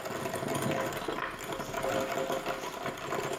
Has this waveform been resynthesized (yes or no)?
no